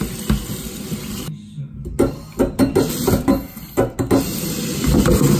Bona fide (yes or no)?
yes